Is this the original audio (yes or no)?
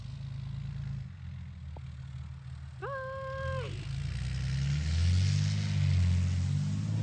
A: yes